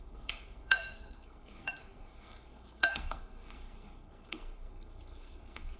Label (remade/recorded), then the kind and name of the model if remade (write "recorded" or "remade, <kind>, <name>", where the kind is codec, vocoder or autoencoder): remade, codec, SNAC